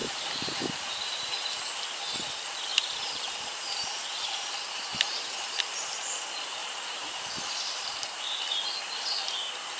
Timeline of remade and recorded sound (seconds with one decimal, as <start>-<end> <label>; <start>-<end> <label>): 0.0-0.9 remade; 0.9-2.7 recorded; 2.7-4.5 remade; 4.5-4.9 recorded; 4.9-5.6 remade; 5.6-6.6 recorded; 6.6-7.3 remade; 7.3-9.8 recorded